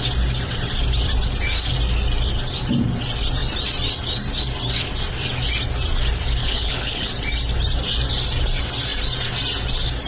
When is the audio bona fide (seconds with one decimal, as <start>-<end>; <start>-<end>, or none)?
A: 0.0-6.4; 7.1-10.1